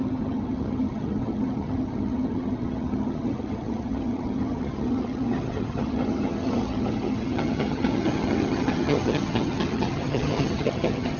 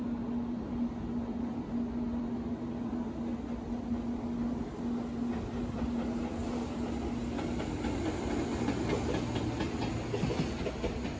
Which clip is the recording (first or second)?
second